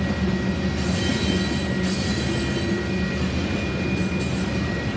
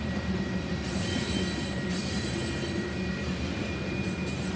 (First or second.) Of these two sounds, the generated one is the second